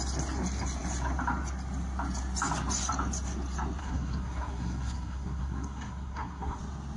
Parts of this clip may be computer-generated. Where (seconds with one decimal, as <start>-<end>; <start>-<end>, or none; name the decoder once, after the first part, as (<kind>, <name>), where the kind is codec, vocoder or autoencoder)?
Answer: 3.8-6.6 (codec, SNAC)